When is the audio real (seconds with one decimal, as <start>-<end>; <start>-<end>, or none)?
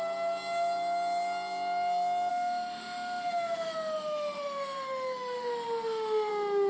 0.0-2.3; 6.3-6.7